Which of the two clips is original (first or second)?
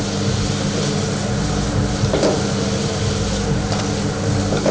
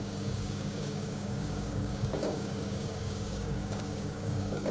first